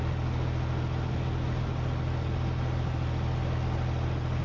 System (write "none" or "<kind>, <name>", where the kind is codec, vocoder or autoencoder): none